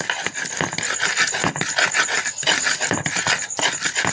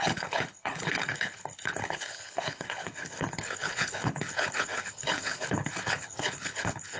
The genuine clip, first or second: first